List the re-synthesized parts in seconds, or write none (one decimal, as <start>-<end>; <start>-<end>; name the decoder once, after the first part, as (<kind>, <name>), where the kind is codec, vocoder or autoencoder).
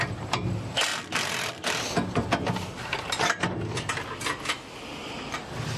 none